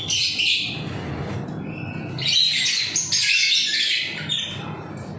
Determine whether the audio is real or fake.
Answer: real